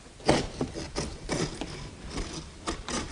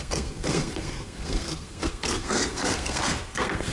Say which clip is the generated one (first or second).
second